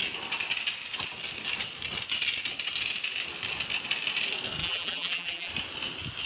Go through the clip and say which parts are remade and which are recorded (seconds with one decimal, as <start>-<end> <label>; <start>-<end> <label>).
0.0-4.6 recorded; 4.6-5.5 remade; 5.5-6.3 recorded